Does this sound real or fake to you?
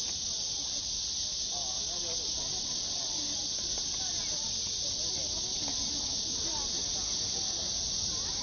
real